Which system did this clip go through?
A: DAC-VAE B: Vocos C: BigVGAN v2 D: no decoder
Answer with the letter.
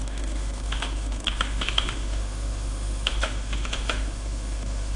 A